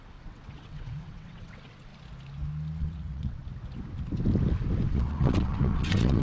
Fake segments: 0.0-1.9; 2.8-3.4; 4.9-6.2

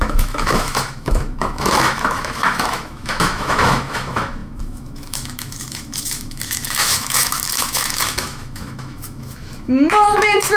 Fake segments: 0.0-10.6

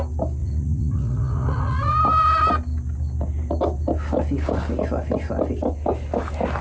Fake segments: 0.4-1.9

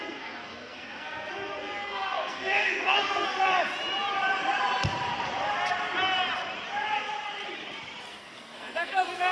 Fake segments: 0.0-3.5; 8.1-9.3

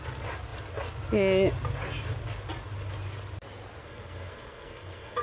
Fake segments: 3.8-5.2

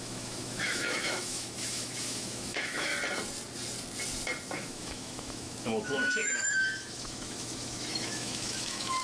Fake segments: 0.0-2.9; 4.5-9.0

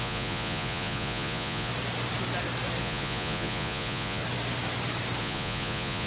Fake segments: 0.0-1.7; 2.8-4.2; 5.2-6.1

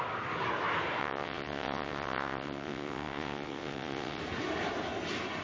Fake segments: 1.0-4.2